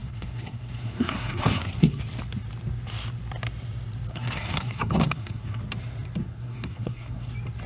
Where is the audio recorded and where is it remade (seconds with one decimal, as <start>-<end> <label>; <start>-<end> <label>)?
0.0-2.0 remade; 2.0-4.1 recorded; 4.1-5.6 remade; 5.6-6.2 recorded; 6.2-7.3 remade; 7.3-7.7 recorded